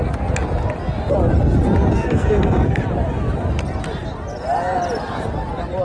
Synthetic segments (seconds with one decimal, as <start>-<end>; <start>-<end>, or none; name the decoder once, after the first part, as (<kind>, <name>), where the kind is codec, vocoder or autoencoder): 1.9-2.8 (codec, SNAC)